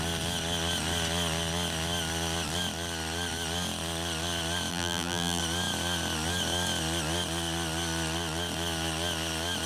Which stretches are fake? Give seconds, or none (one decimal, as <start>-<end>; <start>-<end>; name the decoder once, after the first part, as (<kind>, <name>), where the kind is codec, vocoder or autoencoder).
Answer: 4.7-5.4 (vocoder, BigVGAN v2)